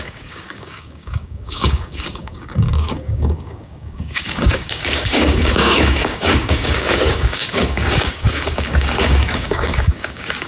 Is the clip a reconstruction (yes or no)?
yes